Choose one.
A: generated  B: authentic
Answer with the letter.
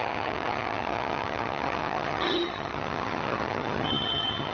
A